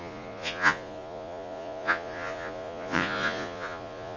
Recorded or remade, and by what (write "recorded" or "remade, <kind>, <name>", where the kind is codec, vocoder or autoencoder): remade, vocoder, Vocos